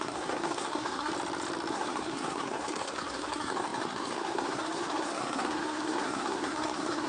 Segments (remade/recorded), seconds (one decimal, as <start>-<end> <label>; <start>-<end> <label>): 0.0-1.1 remade; 1.1-1.7 recorded; 1.7-7.1 remade